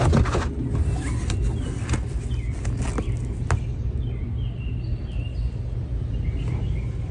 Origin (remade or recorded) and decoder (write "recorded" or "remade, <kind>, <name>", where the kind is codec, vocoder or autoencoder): recorded